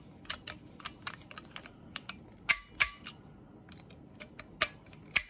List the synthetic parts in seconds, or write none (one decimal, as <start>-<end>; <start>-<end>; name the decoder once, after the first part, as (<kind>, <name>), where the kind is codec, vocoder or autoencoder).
none